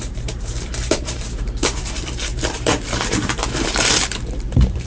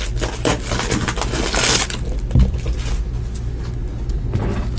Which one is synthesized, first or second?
first